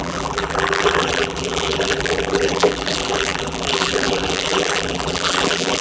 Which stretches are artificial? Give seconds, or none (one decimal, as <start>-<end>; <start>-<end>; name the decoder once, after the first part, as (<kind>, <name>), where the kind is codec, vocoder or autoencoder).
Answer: 0.0-5.8 (vocoder, BigVGAN v2)